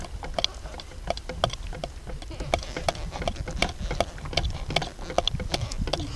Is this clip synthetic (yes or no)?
no